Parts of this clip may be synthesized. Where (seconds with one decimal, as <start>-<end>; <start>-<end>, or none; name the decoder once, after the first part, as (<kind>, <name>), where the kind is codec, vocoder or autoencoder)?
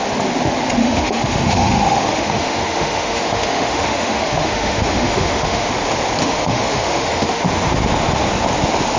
0.8-5.7 (autoencoder, DAC-VAE); 6.2-7.4